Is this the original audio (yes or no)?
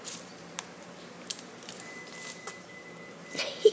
yes